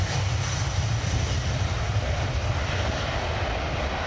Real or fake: real